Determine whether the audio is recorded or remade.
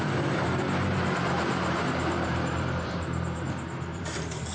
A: remade